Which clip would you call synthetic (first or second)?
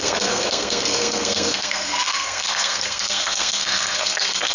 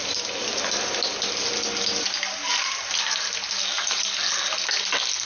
first